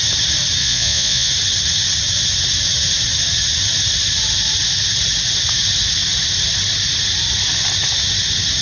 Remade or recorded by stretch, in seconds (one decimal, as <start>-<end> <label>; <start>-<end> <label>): 0.0-0.6 recorded; 0.6-1.3 remade; 1.3-8.6 recorded